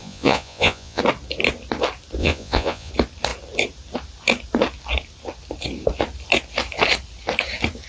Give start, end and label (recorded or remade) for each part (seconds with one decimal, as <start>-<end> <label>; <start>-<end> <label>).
0.0-1.0 remade; 1.0-2.2 recorded; 2.2-2.9 remade; 2.9-7.9 recorded